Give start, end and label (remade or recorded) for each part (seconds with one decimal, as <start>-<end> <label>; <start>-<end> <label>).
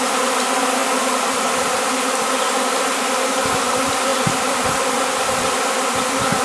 0.0-4.1 recorded; 4.1-5.3 remade; 5.3-6.4 recorded